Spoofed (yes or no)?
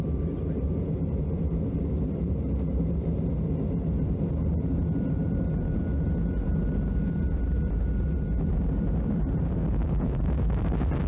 yes